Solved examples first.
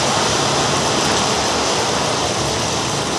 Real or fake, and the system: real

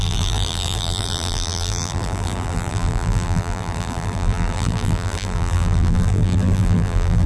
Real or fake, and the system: fake, vocoder, BigVGAN v2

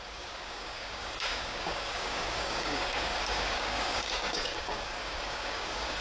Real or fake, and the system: fake, codec, DAC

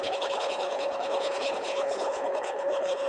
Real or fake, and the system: fake, codec, HILCodec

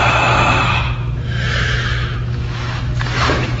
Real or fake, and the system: fake, autoencoder, DAC-VAE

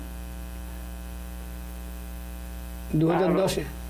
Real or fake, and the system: real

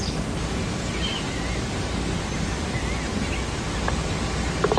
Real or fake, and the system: real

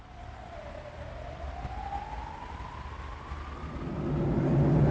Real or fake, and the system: real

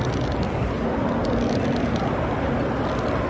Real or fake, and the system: real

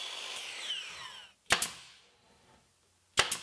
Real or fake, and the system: real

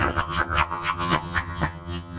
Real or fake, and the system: fake, vocoder, HiFi-GAN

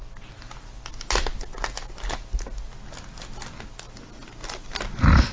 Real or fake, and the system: real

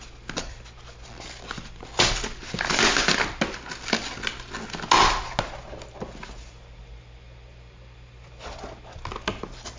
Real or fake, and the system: real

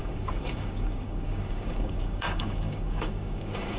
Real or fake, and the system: fake, codec, DAC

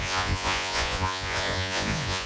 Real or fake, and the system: fake, vocoder, Vocos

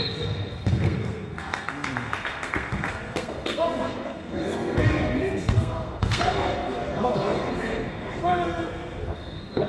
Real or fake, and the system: fake, codec, SNAC